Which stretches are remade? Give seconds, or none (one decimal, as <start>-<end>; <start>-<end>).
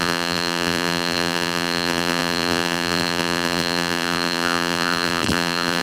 0.0-5.8